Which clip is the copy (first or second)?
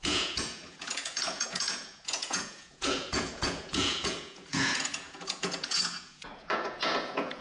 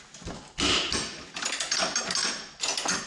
first